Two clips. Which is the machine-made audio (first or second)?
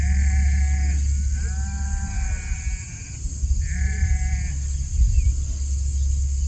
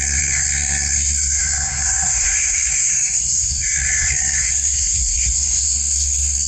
second